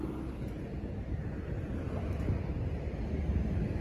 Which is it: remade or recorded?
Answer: recorded